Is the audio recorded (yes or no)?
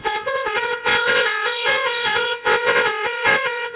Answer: no